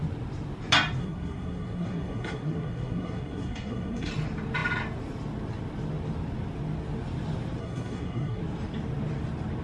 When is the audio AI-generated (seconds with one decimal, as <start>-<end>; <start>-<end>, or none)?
1.0-4.1; 7.6-8.4